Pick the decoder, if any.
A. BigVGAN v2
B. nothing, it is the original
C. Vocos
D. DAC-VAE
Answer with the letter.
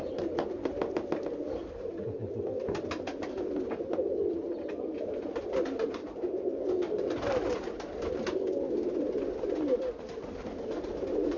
B